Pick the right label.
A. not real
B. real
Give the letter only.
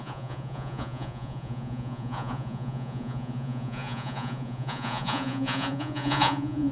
A